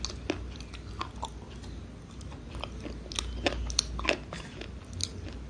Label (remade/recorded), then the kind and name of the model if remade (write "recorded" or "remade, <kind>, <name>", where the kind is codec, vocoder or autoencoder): recorded